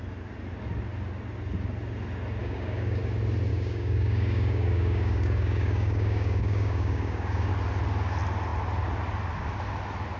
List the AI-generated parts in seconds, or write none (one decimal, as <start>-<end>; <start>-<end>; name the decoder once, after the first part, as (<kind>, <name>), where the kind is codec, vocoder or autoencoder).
2.4-3.0 (codec, DAC); 3.5-7.5